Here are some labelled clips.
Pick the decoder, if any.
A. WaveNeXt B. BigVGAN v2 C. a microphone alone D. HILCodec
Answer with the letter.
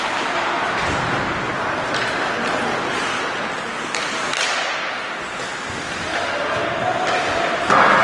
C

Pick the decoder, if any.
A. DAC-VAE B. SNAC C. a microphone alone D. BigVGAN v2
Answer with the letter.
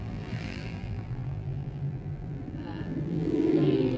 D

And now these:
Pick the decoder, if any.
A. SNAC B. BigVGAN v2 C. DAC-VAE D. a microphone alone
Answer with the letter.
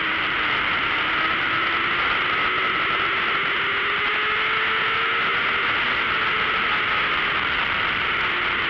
D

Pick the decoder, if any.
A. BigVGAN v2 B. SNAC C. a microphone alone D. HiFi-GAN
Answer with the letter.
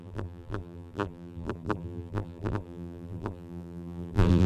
A